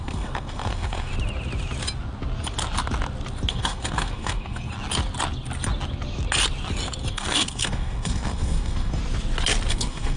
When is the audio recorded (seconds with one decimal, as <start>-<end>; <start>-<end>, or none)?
1.1-3.5; 4.7-7.1; 9.0-9.7